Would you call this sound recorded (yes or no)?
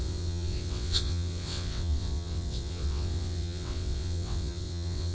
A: no